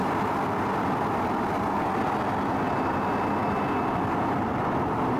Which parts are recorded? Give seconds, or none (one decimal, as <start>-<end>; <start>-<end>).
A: 0.0-5.2